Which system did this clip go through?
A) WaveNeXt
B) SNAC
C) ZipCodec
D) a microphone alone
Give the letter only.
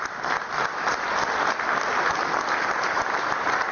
D